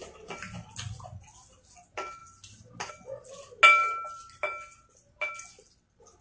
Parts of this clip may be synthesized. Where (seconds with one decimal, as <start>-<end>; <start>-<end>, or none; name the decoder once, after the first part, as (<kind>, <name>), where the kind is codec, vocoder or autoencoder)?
none